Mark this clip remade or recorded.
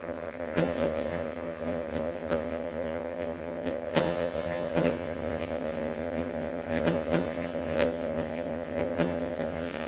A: remade